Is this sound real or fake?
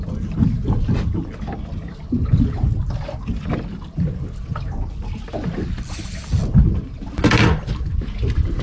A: real